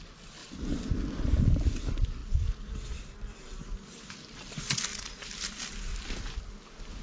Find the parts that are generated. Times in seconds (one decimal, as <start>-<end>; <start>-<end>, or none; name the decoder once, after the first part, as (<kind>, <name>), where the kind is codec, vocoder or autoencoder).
none